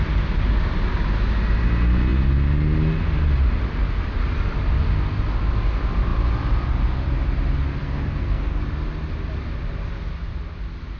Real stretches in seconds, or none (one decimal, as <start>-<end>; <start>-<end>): 0.0-7.8; 8.6-11.0